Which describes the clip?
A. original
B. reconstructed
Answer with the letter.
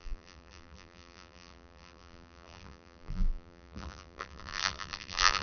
B